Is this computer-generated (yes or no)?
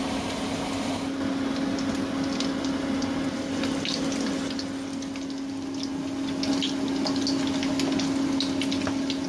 no